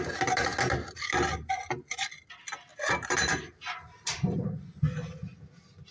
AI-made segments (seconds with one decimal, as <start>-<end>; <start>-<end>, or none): 2.7-4.6

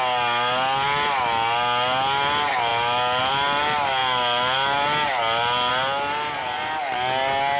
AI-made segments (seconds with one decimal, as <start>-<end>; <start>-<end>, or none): none

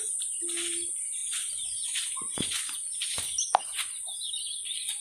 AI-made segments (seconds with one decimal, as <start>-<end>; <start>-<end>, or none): none

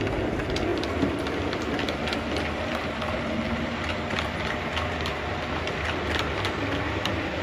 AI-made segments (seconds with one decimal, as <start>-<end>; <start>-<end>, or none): none

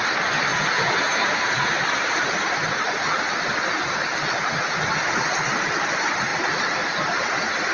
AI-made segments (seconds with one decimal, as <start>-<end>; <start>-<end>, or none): 0.5-1.7

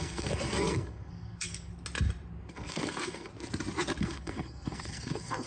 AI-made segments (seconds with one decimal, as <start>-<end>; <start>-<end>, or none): 0.0-1.7; 2.5-3.3; 4.0-5.5

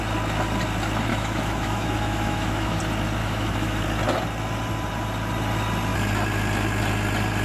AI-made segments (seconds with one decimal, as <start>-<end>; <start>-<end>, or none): 1.1-2.8; 3.2-3.8

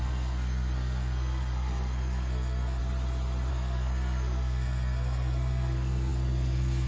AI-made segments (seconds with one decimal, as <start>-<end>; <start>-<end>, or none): 0.0-2.8; 3.5-6.9